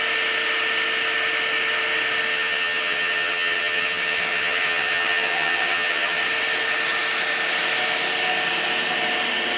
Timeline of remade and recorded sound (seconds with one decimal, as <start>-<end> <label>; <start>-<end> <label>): 0.0-2.3 recorded; 2.3-6.2 remade; 6.2-9.6 recorded